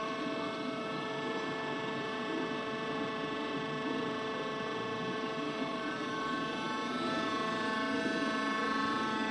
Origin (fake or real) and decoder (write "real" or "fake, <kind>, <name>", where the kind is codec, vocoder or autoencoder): fake, vocoder, BigVGAN v2